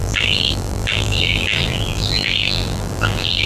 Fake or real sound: fake